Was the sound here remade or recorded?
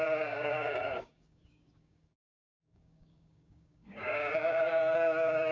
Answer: remade